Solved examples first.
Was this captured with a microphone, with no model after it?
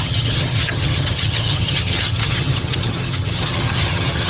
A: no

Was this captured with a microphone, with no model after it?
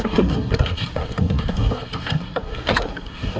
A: no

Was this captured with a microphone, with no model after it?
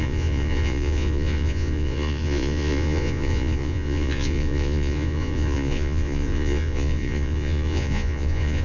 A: no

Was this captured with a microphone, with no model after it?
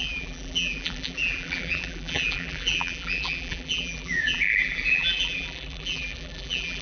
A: no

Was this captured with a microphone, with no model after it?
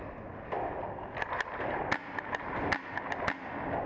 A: yes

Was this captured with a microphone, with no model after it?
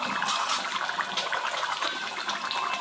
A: yes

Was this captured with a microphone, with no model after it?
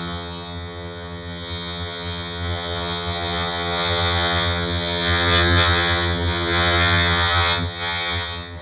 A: no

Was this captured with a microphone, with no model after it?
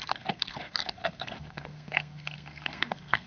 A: no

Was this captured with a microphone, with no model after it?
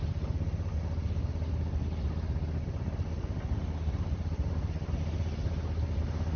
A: yes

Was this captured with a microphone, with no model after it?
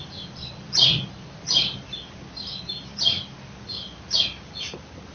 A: yes